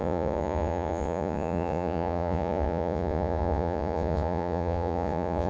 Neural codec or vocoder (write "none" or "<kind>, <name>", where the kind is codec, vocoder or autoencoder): vocoder, Vocos